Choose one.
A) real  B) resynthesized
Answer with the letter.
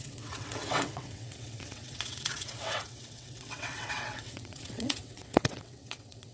B